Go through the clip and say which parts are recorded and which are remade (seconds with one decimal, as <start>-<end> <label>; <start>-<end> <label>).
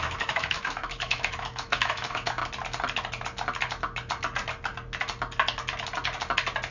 0.0-2.4 remade; 2.4-6.7 recorded